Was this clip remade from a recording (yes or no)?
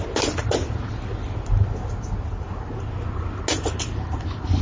no